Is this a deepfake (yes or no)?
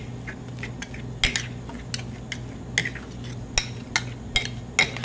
no